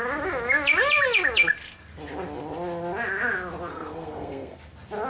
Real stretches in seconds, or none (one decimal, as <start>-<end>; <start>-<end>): 0.0-3.7; 4.6-5.1